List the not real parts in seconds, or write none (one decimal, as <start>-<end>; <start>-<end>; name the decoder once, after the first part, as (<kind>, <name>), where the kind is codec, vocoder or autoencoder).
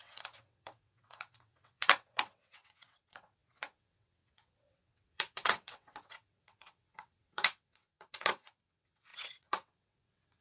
0.0-10.4 (vocoder, WaveNeXt)